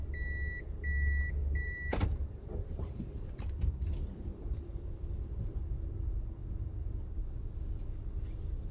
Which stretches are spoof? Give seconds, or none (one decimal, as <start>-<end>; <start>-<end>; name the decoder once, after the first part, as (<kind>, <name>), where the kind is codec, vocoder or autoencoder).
1.4-5.1 (vocoder, BigVGAN v2); 7.2-7.8